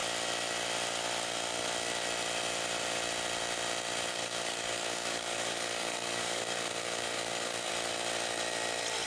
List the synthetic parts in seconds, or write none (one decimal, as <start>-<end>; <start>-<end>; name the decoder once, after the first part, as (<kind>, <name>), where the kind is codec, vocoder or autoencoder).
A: 4.1-7.7 (codec, DAC)